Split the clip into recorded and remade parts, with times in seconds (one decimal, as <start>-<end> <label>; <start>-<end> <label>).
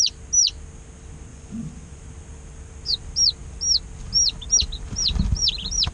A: 0.0-1.3 recorded; 1.3-2.0 remade; 2.0-5.9 recorded